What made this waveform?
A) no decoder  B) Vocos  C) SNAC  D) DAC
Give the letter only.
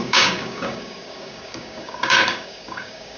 D